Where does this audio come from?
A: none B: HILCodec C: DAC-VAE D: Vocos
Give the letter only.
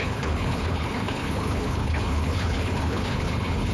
B